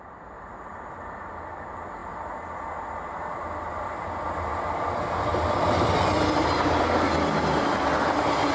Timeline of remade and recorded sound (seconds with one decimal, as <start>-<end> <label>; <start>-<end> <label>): 0.0-8.5 recorded